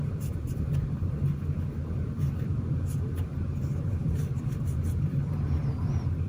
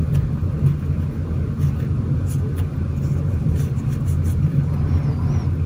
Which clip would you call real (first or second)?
second